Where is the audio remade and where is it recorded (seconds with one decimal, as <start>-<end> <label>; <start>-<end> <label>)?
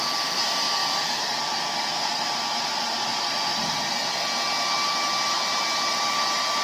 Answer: 0.0-6.6 recorded